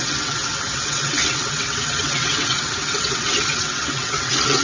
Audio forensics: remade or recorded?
remade